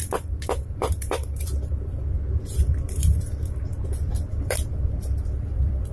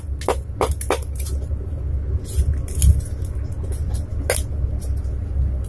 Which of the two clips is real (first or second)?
second